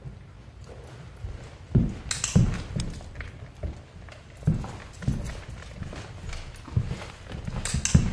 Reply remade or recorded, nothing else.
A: recorded